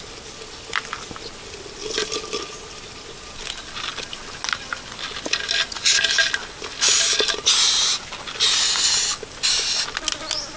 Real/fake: real